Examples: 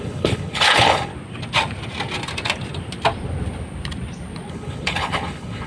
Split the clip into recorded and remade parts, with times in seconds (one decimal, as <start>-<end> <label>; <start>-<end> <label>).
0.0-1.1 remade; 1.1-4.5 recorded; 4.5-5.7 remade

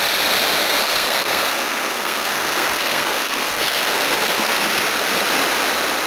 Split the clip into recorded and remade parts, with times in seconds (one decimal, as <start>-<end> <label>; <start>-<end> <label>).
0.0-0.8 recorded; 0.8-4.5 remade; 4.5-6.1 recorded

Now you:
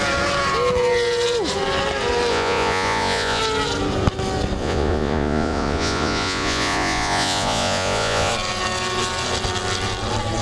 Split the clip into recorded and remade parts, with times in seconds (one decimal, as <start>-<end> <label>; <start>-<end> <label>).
0.0-2.3 recorded; 2.3-3.4 remade; 3.4-4.6 recorded; 4.6-8.3 remade; 8.3-10.4 recorded

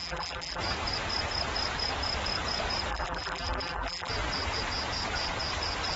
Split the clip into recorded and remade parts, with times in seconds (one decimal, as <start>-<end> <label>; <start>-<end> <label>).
0.0-0.6 remade; 0.6-2.9 recorded; 2.9-4.1 remade; 4.1-6.0 recorded

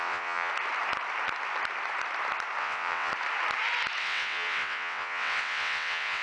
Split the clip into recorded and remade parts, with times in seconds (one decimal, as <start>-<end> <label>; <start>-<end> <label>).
0.0-0.5 remade; 0.5-2.6 recorded; 2.6-3.1 remade; 3.1-4.0 recorded; 4.0-6.2 remade

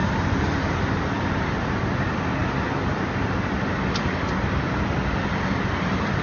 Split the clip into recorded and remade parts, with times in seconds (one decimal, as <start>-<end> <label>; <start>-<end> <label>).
0.0-6.2 recorded

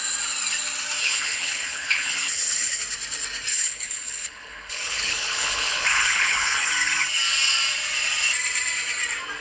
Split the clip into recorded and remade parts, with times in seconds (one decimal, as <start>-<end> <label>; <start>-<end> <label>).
0.0-1.0 recorded; 1.0-2.8 remade; 2.8-3.5 recorded; 3.5-6.7 remade; 6.7-9.4 recorded